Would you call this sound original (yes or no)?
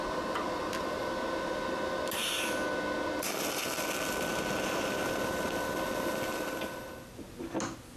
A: yes